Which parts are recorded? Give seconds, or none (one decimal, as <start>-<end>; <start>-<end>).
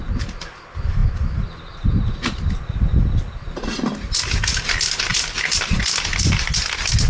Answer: 0.0-7.1